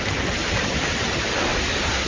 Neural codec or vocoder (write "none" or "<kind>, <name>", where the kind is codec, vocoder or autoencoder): none